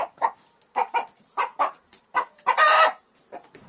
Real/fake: fake